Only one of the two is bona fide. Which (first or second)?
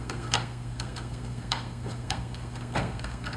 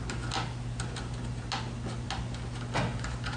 second